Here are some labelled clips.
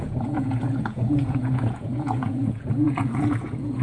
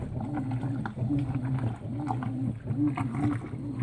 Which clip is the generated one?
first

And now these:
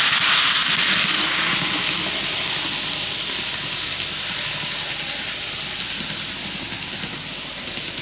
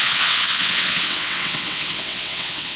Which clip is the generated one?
second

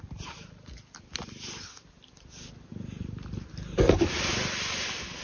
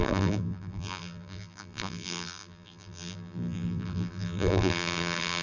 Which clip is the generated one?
second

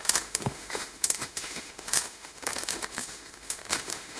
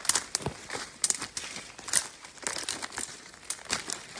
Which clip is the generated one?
first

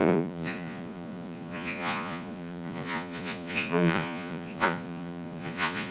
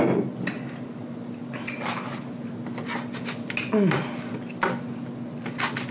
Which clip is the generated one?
first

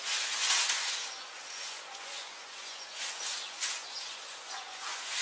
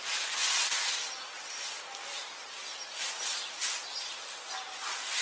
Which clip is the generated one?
first